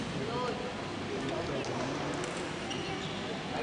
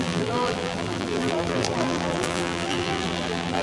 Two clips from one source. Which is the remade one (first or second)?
second